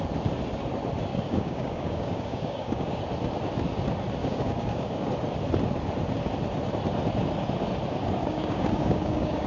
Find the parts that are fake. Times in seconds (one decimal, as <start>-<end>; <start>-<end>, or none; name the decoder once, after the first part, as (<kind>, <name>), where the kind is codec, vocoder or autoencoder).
1.1-3.0 (codec, DAC); 4.2-5.1; 8.2-9.5